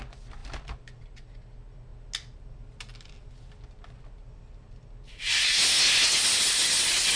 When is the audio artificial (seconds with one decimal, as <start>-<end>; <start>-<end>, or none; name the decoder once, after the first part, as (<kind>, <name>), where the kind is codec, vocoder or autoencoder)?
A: 0.4-1.0 (vocoder, BigVGAN v2)